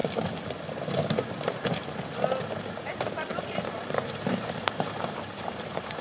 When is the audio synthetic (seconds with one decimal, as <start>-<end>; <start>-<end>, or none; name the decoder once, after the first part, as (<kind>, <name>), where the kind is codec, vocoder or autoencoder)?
2.9-6.0 (vocoder, BigVGAN v2)